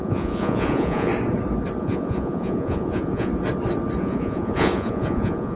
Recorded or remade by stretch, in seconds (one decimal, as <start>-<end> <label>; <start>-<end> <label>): 0.0-1.1 remade; 1.1-1.8 recorded; 1.8-3.3 remade; 3.3-4.0 recorded; 4.0-5.6 remade